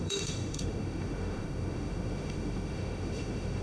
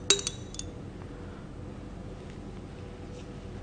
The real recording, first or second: second